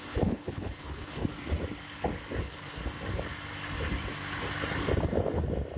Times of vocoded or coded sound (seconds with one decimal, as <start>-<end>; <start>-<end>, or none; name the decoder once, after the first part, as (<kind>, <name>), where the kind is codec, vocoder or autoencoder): 0.0-1.2 (codec, HILCodec); 2.4-2.8